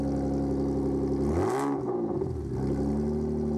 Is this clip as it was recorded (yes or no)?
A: yes